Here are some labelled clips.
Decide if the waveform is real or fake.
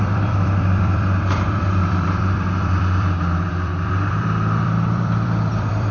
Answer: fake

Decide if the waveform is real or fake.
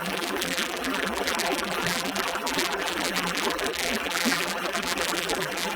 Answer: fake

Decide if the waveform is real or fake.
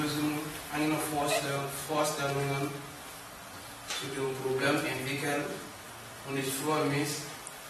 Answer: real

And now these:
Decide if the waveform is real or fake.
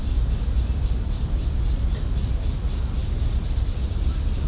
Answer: real